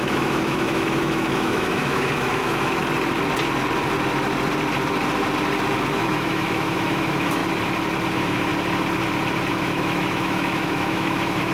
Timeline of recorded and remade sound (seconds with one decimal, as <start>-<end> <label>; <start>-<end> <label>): 0.0-2.8 remade; 2.8-5.9 recorded; 5.9-7.4 remade; 7.4-8.1 recorded; 8.1-8.5 remade; 8.5-9.5 recorded; 9.5-11.5 remade